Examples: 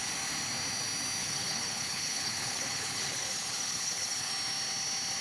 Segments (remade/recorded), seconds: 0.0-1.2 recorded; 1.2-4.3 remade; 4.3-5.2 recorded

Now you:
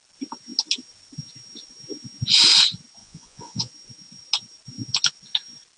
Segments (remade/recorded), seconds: 0.0-3.0 recorded; 3.0-3.7 remade; 3.7-5.8 recorded

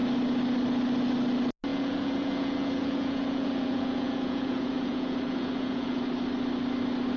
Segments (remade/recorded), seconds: 0.0-1.7 recorded; 1.7-6.0 remade; 6.0-7.2 recorded